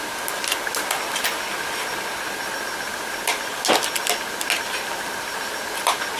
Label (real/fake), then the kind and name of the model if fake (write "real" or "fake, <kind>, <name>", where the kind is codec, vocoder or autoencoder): real